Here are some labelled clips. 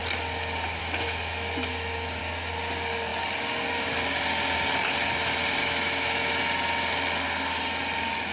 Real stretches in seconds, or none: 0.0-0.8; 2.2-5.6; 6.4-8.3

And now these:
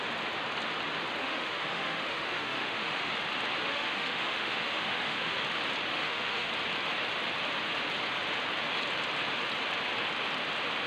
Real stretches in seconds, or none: 0.0-1.2; 3.1-3.7; 5.4-5.9; 6.5-10.9

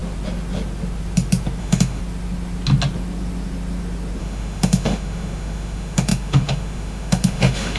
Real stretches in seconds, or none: 0.0-1.6; 2.0-4.2

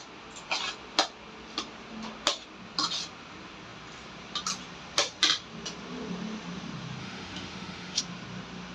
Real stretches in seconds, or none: 0.0-7.0; 8.0-8.7

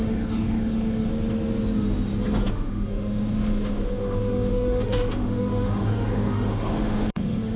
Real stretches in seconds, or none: 1.1-2.5

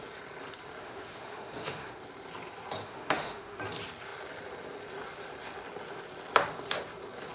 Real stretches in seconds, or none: 0.0-0.8; 2.0-2.8; 3.6-7.3

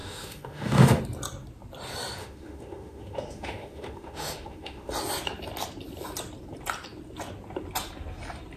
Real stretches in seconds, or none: 1.0-2.2; 4.9-8.6